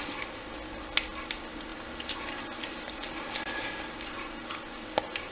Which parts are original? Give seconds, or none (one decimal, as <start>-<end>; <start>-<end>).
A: 0.0-5.3